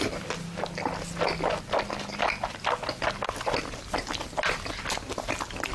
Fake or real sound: real